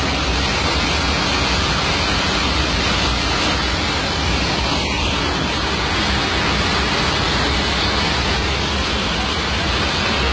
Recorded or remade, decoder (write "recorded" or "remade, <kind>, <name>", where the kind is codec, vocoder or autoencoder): recorded